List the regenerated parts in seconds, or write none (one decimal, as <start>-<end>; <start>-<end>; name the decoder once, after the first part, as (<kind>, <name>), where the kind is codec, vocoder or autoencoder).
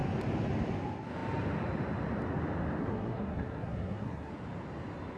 2.8-4.3 (codec, SNAC)